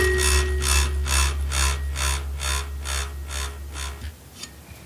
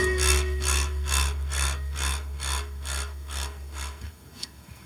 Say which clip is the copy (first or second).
second